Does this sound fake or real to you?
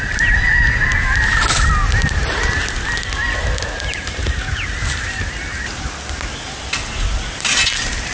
real